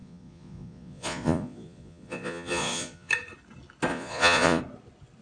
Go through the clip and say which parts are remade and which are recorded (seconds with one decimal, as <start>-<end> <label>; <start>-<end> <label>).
0.0-3.1 remade; 3.1-3.9 recorded; 3.9-4.6 remade; 4.6-5.2 recorded